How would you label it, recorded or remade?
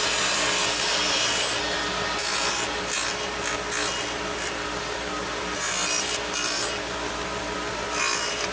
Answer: recorded